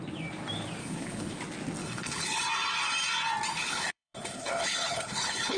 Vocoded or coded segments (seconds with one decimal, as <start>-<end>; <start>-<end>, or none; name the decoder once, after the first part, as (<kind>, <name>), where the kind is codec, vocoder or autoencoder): 0.8-1.4 (codec, HILCodec); 1.8-2.4; 3.5-5.6